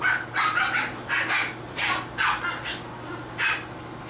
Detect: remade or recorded recorded